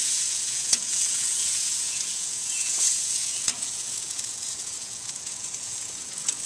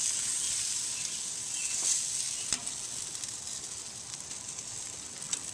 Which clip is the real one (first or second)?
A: second